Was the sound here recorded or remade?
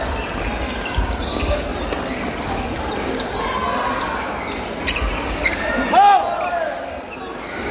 recorded